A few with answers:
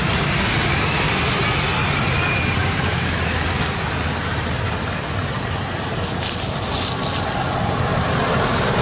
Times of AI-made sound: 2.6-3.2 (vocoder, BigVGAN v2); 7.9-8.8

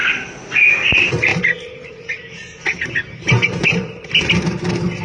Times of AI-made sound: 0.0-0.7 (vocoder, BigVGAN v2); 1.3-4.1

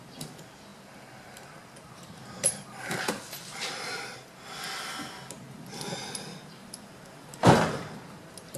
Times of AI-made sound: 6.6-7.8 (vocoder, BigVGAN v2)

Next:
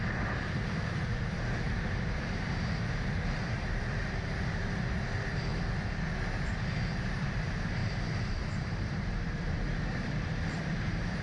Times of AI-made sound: 0.0-5.5 (vocoder, BigVGAN v2); 7.1-11.2

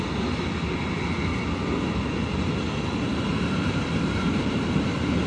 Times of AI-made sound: 2.1-5.3 (vocoder, BigVGAN v2)

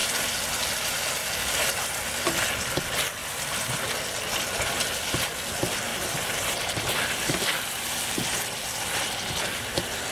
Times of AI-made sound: 5.9-8.1 (vocoder, BigVGAN v2)